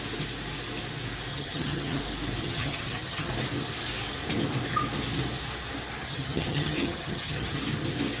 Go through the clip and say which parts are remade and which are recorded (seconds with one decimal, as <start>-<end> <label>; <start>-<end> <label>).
0.0-1.3 recorded; 1.3-2.0 remade; 2.0-2.4 recorded; 2.4-3.3 remade; 3.3-6.0 recorded; 6.0-7.6 remade; 7.6-8.2 recorded